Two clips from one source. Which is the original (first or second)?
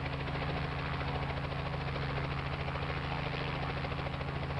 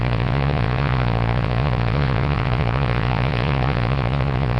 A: first